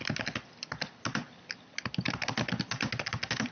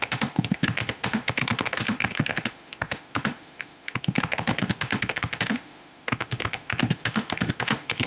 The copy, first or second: second